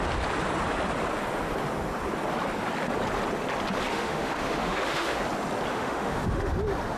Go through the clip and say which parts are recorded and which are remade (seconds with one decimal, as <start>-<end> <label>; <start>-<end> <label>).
0.0-3.9 recorded; 3.9-5.2 remade; 5.2-5.7 recorded; 5.7-6.5 remade; 6.5-7.0 recorded